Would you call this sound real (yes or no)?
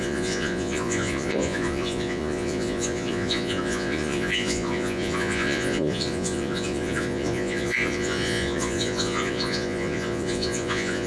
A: no